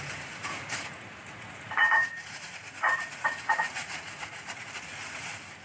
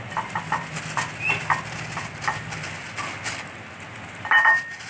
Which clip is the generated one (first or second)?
first